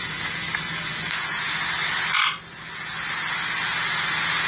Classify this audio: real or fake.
real